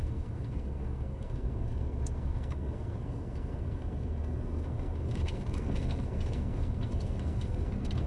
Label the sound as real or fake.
fake